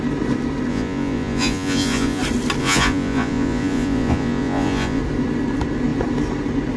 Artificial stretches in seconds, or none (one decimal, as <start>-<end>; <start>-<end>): 0.7-2.2; 2.6-5.0